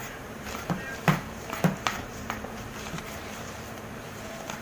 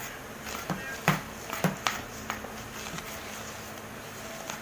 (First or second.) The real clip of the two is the second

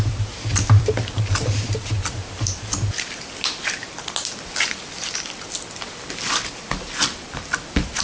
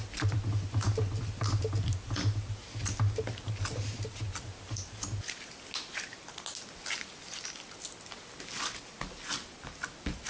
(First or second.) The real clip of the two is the second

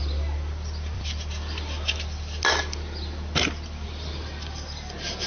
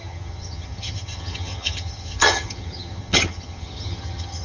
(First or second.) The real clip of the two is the first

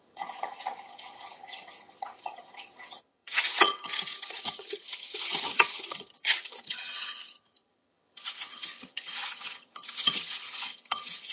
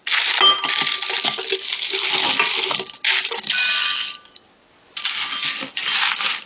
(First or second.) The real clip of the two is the second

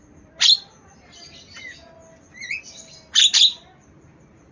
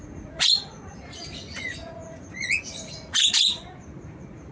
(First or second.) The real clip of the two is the first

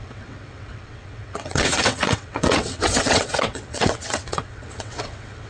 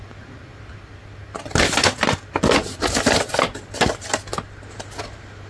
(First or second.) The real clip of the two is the second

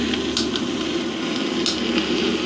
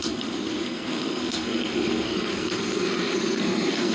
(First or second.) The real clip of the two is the first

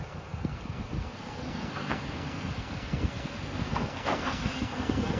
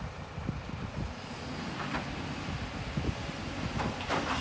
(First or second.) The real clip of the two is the second